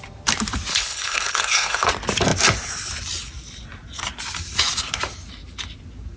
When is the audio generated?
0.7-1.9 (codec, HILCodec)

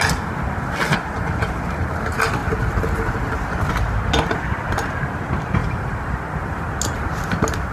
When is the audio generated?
0.9-1.9 (vocoder, BigVGAN v2); 5.6-6.7

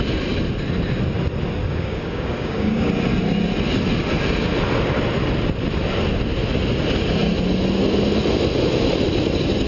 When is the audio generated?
1.6-2.9 (codec, DAC)

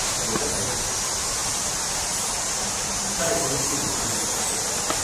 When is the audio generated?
1.4-4.4 (vocoder, BigVGAN v2)

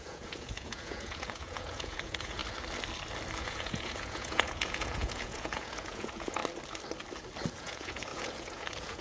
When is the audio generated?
0.0-2.4 (vocoder, Vocos); 3.4-6.4; 7.5-9.0

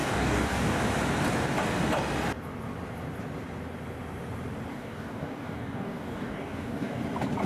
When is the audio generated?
0.0-0.8 (codec, DAC); 4.7-7.0

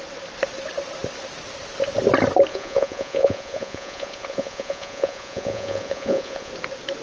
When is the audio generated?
2.5-6.5 (vocoder, Vocos)